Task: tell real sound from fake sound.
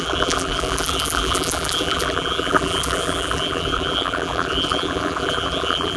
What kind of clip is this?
fake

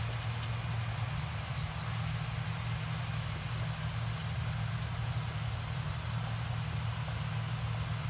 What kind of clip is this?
real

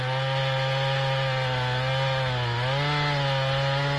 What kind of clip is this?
real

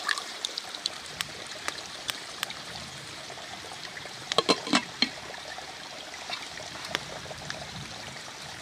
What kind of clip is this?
fake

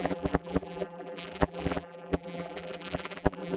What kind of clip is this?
fake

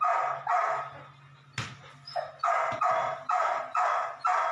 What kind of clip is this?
real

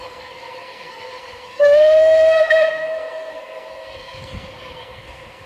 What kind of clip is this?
fake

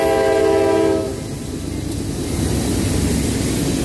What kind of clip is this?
real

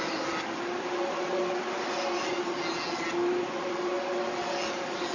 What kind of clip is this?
real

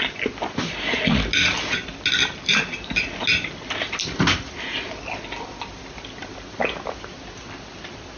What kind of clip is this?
real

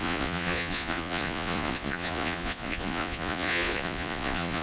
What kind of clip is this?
fake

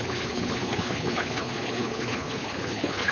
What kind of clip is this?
fake